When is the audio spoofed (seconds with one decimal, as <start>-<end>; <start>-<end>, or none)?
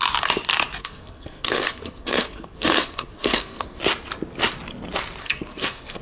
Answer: 0.8-3.8; 5.2-6.0